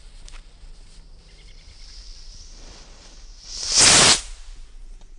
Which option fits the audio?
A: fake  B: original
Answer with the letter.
B